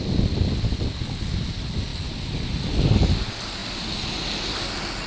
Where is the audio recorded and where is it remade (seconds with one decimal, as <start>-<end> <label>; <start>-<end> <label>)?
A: 0.0-5.1 recorded